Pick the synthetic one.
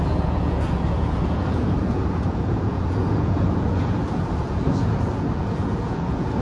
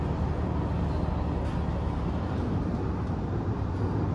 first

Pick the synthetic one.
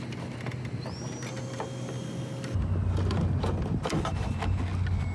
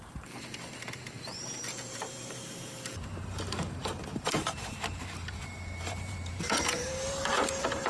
second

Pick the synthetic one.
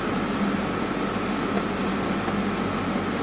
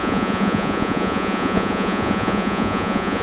second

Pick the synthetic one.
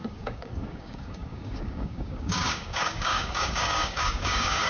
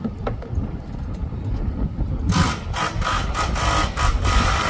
first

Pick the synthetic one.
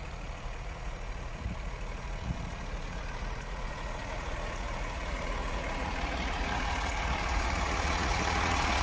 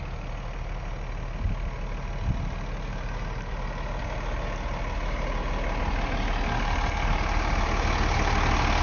first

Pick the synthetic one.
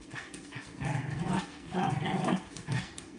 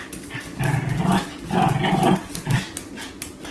first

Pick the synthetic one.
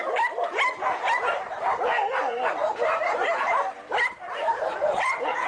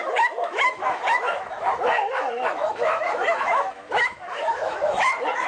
second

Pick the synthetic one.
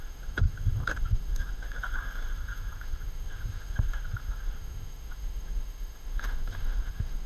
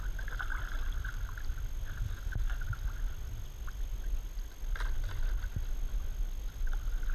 first